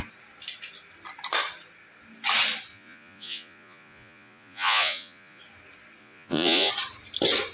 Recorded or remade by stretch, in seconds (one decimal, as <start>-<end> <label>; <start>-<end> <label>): 0.0-2.7 recorded; 2.7-5.4 remade; 5.4-6.0 recorded; 6.0-6.7 remade; 6.7-7.5 recorded